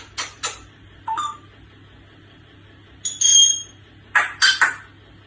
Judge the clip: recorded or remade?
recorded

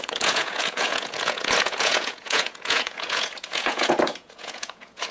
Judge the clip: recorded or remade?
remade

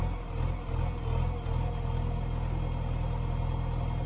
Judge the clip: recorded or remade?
recorded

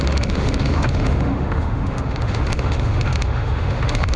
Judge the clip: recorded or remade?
remade